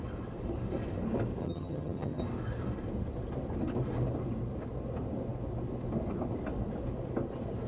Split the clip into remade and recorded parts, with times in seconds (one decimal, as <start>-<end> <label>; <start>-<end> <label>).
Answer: 0.0-1.4 recorded; 1.4-2.2 remade; 2.2-7.7 recorded